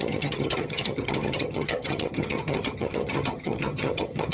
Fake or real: fake